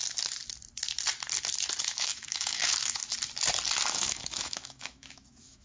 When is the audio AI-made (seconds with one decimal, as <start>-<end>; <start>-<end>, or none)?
1.8-3.0; 3.9-5.6